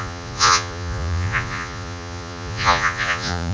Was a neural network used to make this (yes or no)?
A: yes